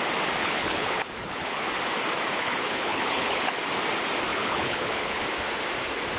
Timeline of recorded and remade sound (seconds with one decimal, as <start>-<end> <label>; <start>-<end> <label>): 0.0-0.4 recorded; 0.4-1.7 remade; 1.7-2.3 recorded; 2.3-3.6 remade; 3.6-4.3 recorded; 4.3-5.2 remade; 5.2-6.2 recorded